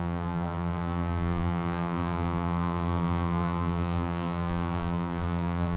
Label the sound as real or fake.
fake